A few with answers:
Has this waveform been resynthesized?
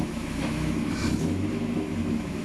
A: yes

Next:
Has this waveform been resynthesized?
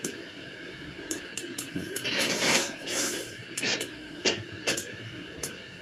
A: yes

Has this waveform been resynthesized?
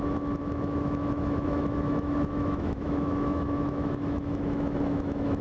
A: yes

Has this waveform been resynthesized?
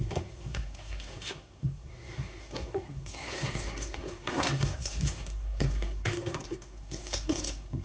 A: yes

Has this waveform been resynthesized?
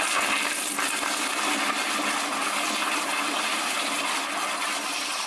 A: no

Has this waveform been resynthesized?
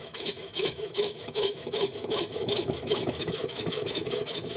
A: yes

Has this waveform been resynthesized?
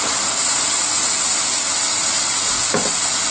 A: no